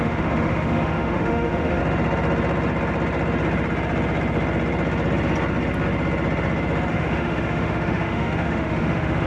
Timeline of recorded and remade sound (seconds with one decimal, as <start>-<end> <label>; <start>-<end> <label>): 0.0-1.8 remade; 1.8-6.9 recorded; 6.9-9.3 remade